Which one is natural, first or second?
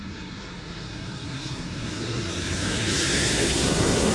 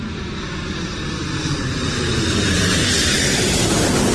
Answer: second